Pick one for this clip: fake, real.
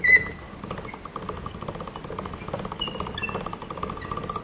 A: real